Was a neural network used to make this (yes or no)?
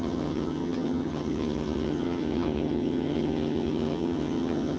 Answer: yes